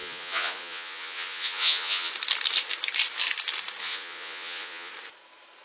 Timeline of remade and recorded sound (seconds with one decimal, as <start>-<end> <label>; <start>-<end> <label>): 0.0-2.1 remade; 2.1-3.8 recorded; 3.8-4.9 remade; 4.9-5.6 recorded